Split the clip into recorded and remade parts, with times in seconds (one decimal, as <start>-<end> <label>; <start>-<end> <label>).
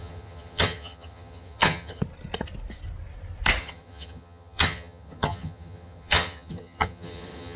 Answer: 0.0-2.0 remade; 2.0-3.6 recorded; 3.6-7.6 remade